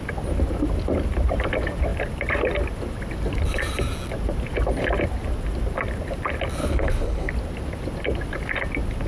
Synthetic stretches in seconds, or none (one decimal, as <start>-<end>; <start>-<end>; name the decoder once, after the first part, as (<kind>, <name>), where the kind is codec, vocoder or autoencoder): 6.6-7.3 (codec, HILCodec)